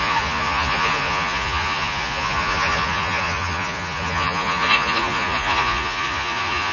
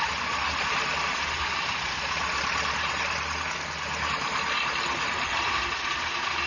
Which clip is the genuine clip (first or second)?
second